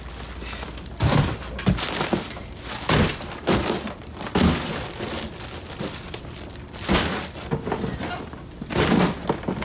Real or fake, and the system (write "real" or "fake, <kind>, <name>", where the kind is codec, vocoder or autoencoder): real